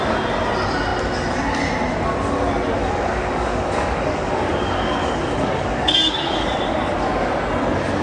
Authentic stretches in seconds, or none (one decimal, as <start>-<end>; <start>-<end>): 0.0-2.8; 7.3-8.0